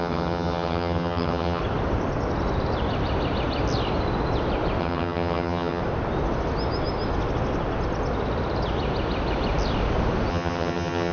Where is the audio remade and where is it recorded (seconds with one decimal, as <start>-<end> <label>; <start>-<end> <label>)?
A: 0.0-1.6 remade; 1.6-4.8 recorded; 4.8-5.8 remade; 5.8-10.3 recorded; 10.3-11.1 remade